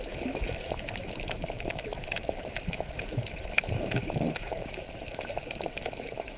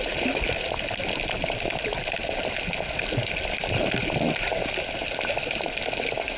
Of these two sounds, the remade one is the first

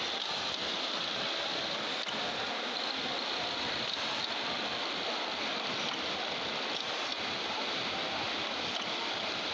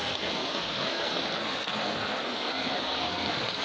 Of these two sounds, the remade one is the second